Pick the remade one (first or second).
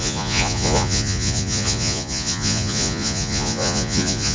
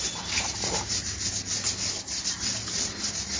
first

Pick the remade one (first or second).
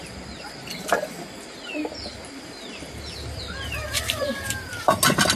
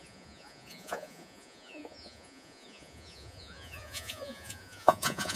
second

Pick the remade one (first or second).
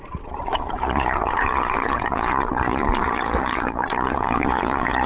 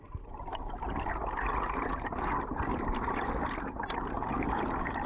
first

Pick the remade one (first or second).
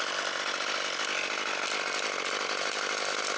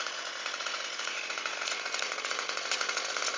second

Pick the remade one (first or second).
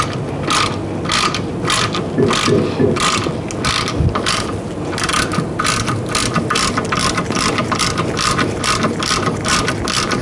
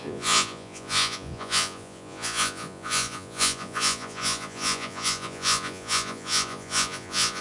second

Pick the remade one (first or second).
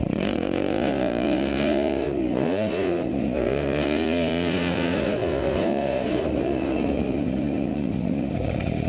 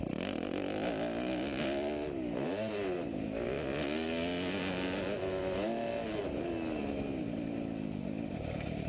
first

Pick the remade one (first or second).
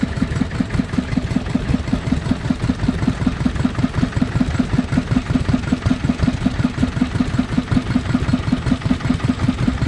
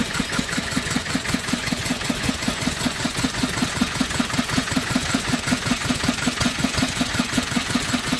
second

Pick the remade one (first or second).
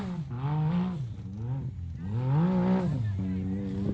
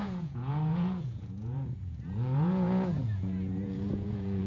second